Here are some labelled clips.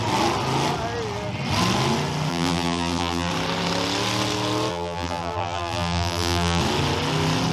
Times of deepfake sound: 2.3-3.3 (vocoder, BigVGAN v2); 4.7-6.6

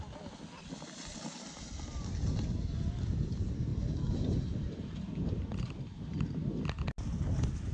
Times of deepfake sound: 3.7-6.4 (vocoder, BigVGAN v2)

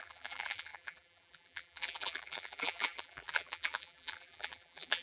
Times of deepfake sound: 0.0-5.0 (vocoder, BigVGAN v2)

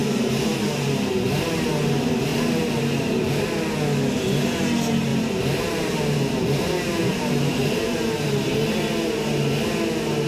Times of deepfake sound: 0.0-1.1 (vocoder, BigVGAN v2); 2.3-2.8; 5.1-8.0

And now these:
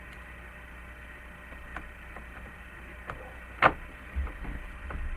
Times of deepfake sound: none

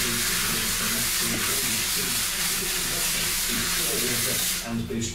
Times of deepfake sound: 1.2-4.1 (vocoder, BigVGAN v2)

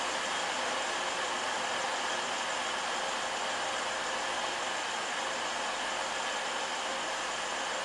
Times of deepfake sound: none